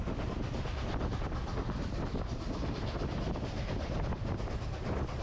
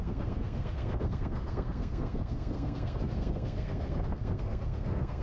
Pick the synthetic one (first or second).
second